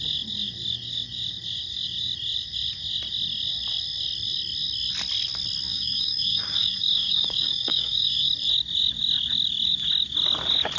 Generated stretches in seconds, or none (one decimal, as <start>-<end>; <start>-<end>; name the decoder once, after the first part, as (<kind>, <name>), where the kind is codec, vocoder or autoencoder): 5.7-8.3 (codec, DAC)